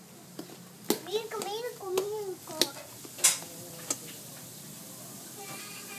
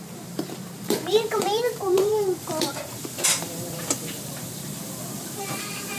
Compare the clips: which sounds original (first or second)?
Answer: first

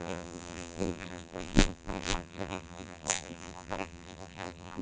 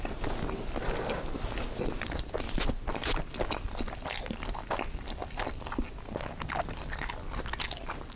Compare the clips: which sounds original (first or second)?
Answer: second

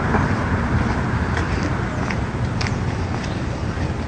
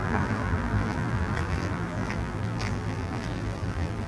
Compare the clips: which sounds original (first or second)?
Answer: first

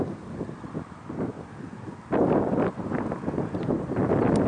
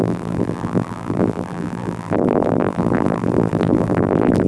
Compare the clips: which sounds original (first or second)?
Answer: first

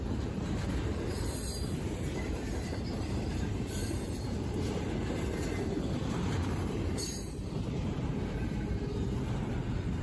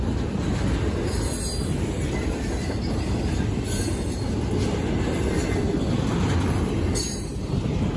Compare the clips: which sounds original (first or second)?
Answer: second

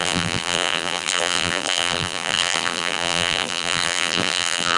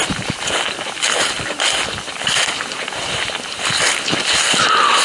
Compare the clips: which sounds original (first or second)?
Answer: second